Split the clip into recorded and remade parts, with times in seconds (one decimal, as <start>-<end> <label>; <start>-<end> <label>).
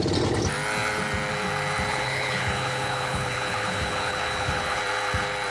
0.0-1.9 recorded; 1.9-4.8 remade; 4.8-5.5 recorded